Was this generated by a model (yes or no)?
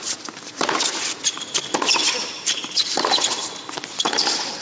yes